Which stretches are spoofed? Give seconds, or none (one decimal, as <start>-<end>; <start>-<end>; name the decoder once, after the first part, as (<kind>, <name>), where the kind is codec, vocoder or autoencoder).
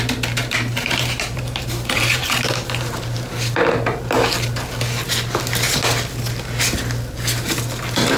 0.4-3.3 (vocoder, BigVGAN v2)